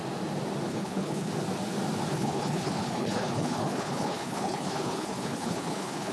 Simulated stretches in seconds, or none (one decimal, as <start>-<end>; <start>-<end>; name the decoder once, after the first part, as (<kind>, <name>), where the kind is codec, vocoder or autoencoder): 0.7-1.3 (codec, HILCodec); 2.1-6.1